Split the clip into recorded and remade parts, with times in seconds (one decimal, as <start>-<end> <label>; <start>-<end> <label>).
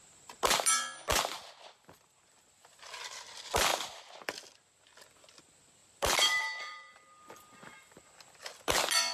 0.0-5.8 recorded; 5.8-6.9 remade; 6.9-9.1 recorded